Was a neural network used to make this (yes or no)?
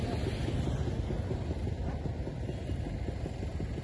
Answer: no